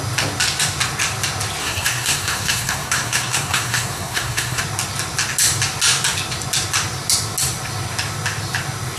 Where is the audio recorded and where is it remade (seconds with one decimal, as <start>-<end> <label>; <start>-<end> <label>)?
0.0-1.6 recorded; 1.6-4.6 remade; 4.6-9.0 recorded